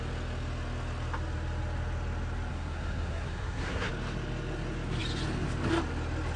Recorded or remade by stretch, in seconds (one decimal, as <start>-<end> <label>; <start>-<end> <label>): 0.0-2.5 recorded; 2.5-3.9 remade; 3.9-6.4 recorded